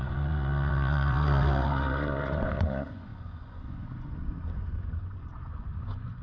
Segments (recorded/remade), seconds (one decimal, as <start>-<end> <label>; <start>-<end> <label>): 0.0-6.2 remade